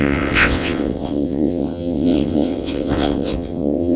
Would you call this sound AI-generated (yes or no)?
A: yes